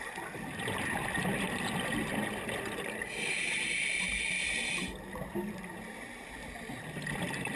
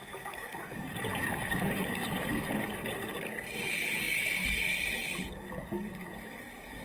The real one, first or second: first